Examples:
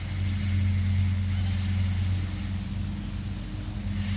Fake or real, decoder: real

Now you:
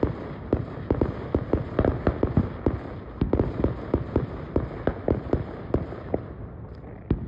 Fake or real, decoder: real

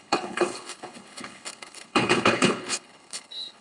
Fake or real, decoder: fake, codec, HILCodec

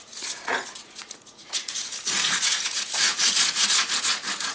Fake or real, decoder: fake, vocoder, Vocos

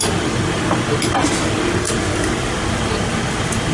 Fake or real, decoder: real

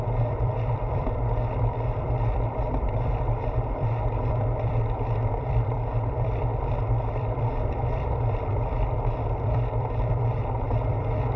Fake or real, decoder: fake, vocoder, BigVGAN v2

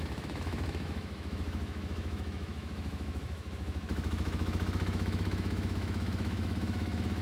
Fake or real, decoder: fake, autoencoder, DAC-VAE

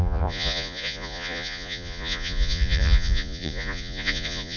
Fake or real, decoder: fake, vocoder, Vocos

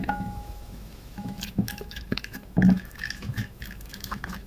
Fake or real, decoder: fake, autoencoder, DAC-VAE